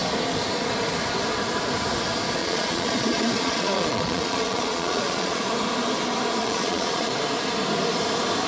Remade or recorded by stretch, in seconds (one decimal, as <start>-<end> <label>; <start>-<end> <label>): 0.0-2.4 recorded; 2.4-5.4 remade; 5.4-6.4 recorded; 6.4-7.1 remade; 7.1-8.5 recorded